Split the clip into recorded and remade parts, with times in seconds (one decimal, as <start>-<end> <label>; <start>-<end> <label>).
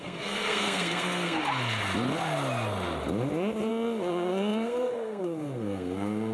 0.0-1.4 remade; 1.4-3.7 recorded; 3.7-6.3 remade